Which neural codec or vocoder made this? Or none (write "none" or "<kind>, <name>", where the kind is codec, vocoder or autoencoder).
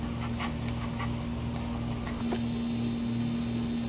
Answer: none